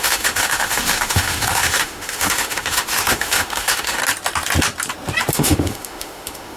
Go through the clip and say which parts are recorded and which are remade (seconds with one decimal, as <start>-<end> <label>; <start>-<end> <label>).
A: 0.0-4.0 remade; 4.0-5.3 recorded; 5.3-6.6 remade